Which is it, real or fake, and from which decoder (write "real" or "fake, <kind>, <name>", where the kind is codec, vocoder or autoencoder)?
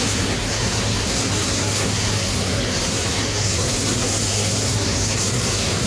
fake, codec, SNAC